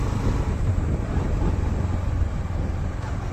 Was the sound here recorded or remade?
recorded